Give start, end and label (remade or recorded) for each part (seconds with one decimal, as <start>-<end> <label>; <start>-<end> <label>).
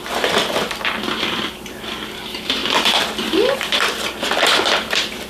0.0-5.3 remade